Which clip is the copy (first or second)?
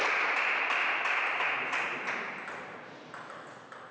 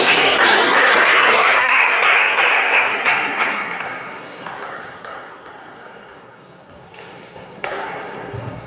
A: second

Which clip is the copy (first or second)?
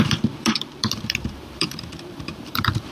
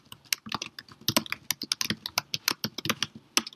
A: first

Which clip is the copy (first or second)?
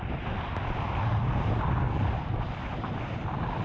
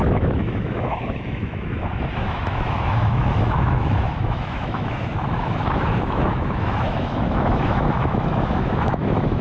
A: second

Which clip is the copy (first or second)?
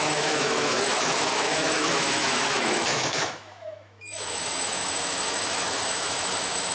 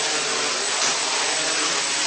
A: first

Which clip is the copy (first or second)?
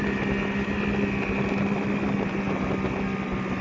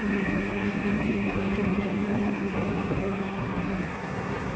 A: second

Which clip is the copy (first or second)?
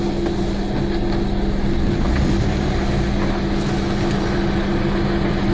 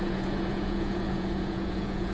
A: second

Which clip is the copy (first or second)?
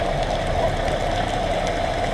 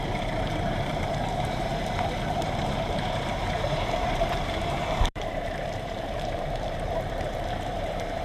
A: second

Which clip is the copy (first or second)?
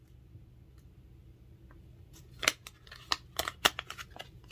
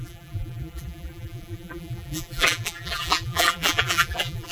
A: second